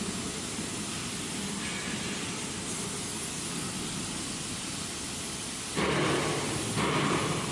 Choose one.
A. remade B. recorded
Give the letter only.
B